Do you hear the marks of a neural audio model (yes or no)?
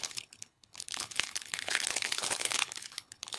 yes